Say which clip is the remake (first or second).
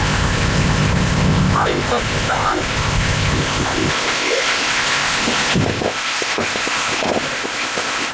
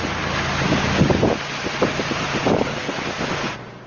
first